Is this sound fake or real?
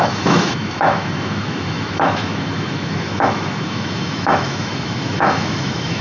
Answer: fake